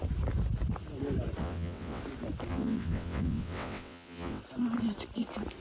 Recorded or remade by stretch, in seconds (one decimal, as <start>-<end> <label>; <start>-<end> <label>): 0.0-1.4 recorded; 1.4-2.0 remade; 2.0-2.5 recorded; 2.5-4.4 remade; 4.4-5.6 recorded

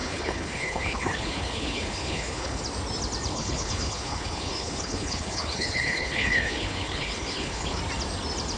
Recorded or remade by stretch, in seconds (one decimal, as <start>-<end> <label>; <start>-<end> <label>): 0.0-2.6 remade; 2.6-3.3 recorded; 3.3-7.8 remade; 7.8-8.6 recorded

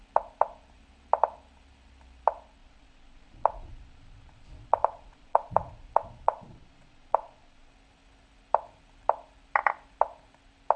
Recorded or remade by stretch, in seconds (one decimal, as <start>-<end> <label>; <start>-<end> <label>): 0.0-2.6 recorded; 2.6-7.7 remade; 7.7-10.8 recorded

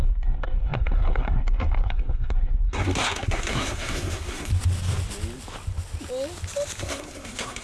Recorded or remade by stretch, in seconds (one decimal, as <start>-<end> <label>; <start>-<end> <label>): 0.0-4.5 remade; 4.5-6.8 recorded; 6.8-7.6 remade